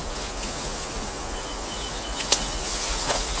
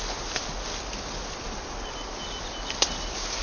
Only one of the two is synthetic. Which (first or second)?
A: first